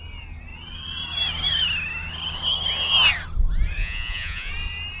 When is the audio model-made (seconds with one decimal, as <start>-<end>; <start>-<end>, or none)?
3.8-4.5